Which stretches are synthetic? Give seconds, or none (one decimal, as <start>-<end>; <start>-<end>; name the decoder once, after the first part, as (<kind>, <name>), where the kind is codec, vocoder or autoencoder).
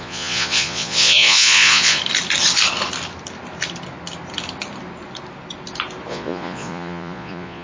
0.0-2.0 (vocoder, Vocos); 6.1-7.6